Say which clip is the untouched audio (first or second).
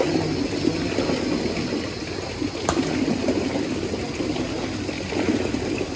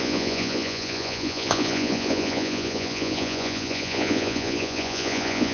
first